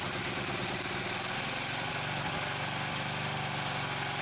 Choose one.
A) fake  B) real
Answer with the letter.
B